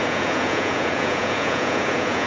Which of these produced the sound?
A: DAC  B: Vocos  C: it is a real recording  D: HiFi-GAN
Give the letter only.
B